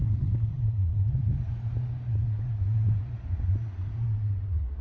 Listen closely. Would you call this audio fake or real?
real